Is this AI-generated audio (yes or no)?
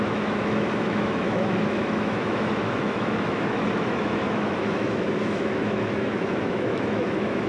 yes